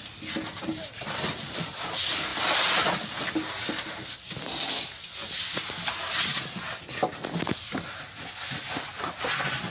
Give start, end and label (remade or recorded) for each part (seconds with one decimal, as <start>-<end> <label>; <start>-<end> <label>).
0.0-9.7 recorded